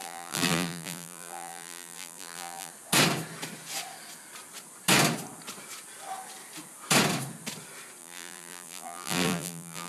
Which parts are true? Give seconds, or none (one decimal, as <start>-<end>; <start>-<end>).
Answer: 2.7-8.0